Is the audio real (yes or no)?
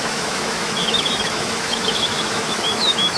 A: no